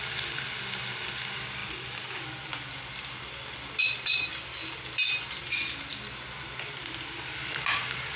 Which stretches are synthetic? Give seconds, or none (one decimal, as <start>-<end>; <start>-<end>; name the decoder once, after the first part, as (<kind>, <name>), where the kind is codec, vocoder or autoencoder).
none